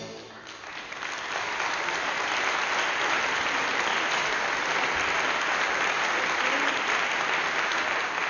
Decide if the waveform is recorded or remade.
recorded